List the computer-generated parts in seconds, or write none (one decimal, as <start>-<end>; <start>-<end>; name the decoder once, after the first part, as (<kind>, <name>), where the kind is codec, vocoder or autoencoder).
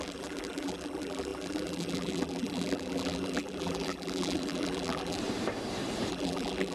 0.0-5.2 (vocoder, BigVGAN v2); 6.1-6.7